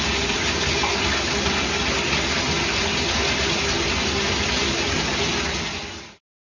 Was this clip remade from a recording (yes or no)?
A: no